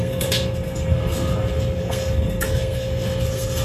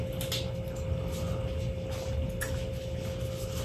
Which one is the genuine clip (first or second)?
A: second